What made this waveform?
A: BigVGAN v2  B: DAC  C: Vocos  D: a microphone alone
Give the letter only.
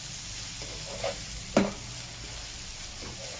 D